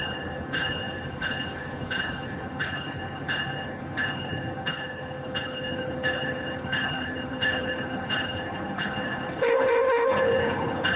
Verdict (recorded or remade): remade